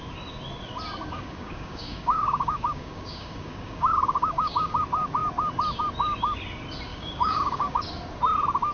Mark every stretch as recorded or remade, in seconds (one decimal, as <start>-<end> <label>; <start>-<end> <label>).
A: 0.0-1.1 recorded; 1.1-4.8 remade; 4.8-6.9 recorded; 6.9-7.8 remade; 7.8-8.7 recorded